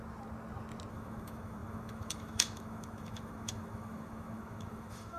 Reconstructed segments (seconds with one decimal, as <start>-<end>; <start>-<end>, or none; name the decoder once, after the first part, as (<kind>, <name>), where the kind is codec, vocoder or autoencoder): 0.9-5.2 (autoencoder, DAC-VAE)